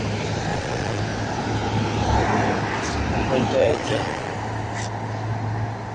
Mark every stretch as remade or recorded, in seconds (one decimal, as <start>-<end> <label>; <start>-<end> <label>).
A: 0.0-0.5 recorded; 0.5-1.0 remade; 1.0-3.6 recorded; 3.6-4.3 remade; 4.3-5.9 recorded